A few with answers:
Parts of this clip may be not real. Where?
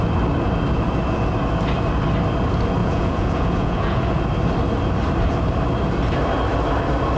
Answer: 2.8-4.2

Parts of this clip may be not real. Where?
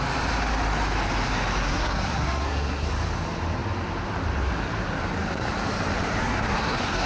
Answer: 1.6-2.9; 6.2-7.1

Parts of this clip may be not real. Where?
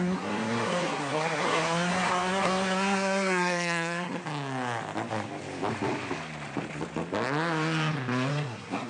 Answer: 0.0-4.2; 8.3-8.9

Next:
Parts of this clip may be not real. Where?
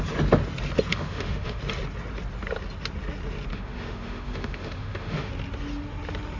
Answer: 0.9-1.6; 3.5-5.3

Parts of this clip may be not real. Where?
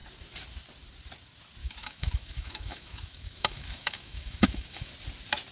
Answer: 1.6-4.9